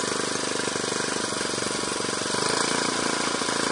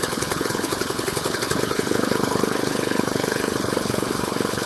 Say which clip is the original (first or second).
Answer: first